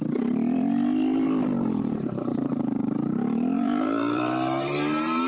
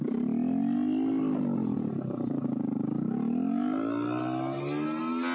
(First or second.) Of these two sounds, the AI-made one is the first